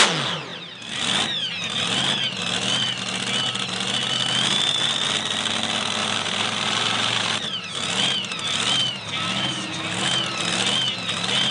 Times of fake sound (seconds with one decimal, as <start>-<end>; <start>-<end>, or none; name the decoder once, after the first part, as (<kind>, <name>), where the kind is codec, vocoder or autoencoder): 6.0-7.7 (vocoder, BigVGAN v2)